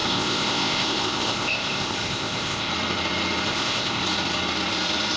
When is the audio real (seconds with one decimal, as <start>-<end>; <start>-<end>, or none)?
2.7-3.5; 4.0-5.2